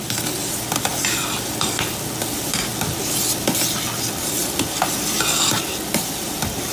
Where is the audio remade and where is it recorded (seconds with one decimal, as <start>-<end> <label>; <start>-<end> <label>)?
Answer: 0.0-6.7 recorded

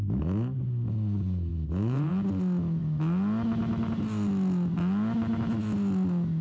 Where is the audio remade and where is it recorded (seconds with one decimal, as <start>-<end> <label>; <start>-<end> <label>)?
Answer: 0.0-1.5 recorded; 1.5-2.1 remade; 2.1-6.4 recorded

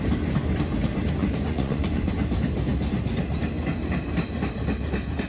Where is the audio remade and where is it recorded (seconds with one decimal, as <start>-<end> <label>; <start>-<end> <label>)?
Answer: 0.0-1.2 recorded; 1.2-2.1 remade; 2.1-5.3 recorded

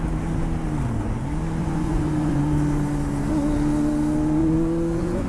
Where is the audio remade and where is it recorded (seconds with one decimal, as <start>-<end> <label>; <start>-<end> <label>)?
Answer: 0.0-1.6 recorded; 1.6-2.4 remade; 2.4-4.4 recorded; 4.4-5.3 remade